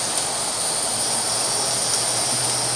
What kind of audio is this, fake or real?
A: real